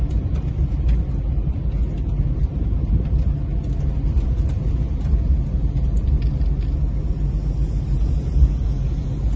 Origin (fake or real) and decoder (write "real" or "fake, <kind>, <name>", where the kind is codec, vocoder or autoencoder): real